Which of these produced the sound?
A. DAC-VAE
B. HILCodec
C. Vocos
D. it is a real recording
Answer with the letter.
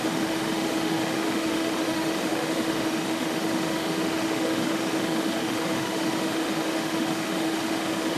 A